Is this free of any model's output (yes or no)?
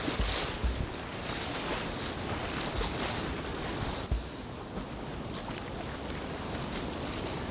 yes